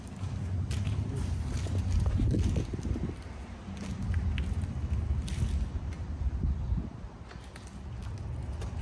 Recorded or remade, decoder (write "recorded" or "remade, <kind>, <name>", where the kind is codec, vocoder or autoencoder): recorded